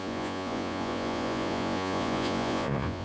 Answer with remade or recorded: remade